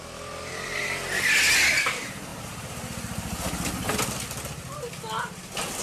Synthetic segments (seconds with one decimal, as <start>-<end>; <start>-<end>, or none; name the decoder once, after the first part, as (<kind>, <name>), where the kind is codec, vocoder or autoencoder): none